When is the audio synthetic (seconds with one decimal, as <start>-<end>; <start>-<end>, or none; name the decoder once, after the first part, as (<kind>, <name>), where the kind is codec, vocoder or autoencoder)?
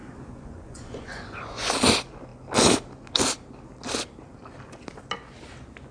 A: 0.0-1.7 (vocoder, Vocos)